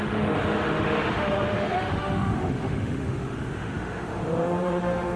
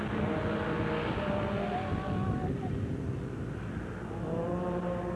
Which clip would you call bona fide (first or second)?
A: second